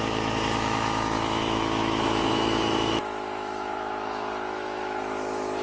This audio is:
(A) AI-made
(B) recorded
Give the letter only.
A